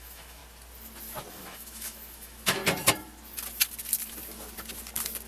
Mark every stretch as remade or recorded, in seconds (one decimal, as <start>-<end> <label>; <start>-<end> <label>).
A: 0.0-0.4 remade; 0.4-1.3 recorded; 1.3-2.6 remade; 2.6-5.3 recorded